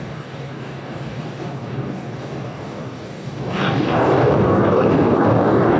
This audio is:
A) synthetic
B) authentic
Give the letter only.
A